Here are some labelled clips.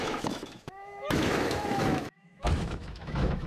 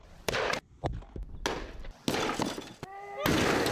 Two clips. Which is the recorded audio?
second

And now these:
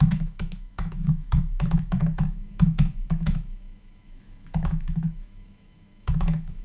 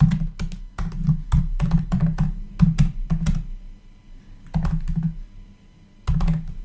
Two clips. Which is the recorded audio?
second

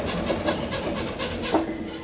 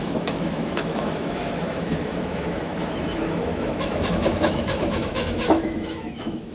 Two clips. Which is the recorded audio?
first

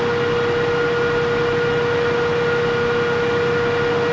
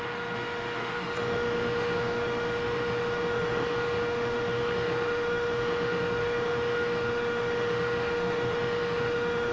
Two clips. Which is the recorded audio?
first